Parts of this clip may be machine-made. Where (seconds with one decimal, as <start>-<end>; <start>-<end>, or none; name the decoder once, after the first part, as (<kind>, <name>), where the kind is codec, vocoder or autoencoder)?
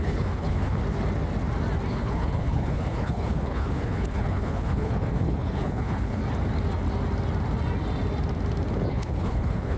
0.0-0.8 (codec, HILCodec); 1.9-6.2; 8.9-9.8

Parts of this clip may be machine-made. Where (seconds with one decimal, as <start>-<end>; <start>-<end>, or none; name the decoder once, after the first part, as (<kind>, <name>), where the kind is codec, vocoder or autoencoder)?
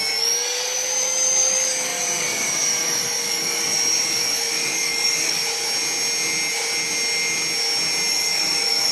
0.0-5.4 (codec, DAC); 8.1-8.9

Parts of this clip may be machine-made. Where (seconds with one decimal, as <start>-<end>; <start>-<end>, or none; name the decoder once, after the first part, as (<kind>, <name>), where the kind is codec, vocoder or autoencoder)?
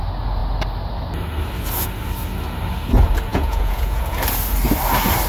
3.3-4.0 (vocoder, Vocos)